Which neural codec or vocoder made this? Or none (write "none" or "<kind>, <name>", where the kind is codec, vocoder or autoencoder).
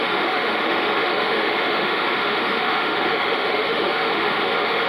autoencoder, DAC-VAE